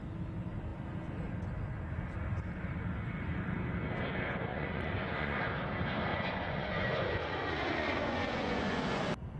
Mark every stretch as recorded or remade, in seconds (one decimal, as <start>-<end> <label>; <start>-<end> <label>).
0.0-4.5 recorded; 4.5-5.4 remade; 5.4-6.1 recorded; 6.1-9.0 remade; 9.0-9.4 recorded